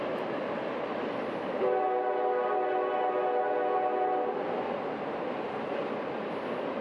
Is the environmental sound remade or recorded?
recorded